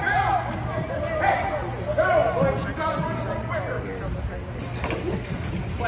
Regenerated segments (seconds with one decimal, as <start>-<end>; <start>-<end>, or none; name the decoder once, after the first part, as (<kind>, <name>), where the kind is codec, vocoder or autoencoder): none